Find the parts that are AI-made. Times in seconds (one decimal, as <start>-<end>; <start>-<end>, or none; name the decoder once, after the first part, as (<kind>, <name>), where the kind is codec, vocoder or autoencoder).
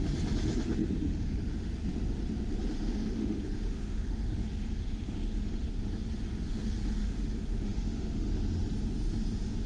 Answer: 1.1-1.7 (autoencoder, DAC-VAE); 2.9-5.7; 7.0-8.3